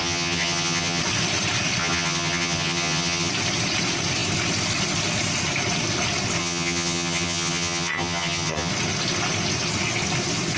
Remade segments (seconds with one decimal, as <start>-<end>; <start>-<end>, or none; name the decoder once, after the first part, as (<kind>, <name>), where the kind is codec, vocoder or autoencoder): 0.0-1.0 (vocoder, HiFi-GAN); 1.8-3.3; 6.4-8.7